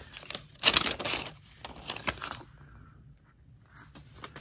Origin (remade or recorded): recorded